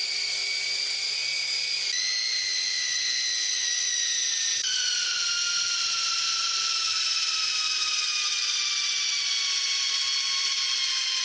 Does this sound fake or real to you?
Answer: real